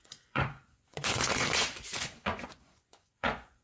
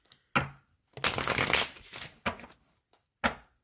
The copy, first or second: first